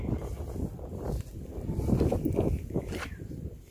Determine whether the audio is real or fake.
real